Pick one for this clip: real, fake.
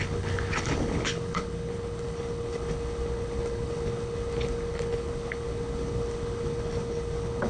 fake